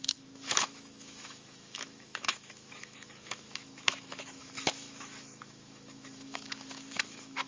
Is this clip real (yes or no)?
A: no